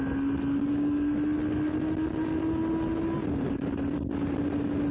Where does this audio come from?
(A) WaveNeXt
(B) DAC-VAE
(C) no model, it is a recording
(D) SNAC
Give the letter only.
C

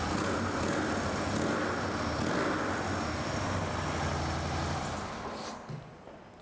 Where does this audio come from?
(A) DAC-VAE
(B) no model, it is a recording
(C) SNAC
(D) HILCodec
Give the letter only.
B